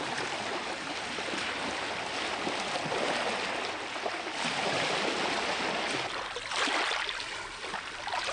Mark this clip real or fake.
real